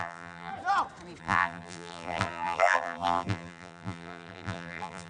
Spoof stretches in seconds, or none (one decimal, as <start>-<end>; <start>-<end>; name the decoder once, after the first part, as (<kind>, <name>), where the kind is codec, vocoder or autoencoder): 0.0-0.5 (vocoder, BigVGAN v2); 1.2-5.1